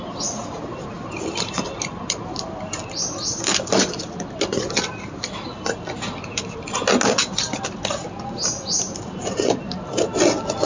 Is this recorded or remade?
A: recorded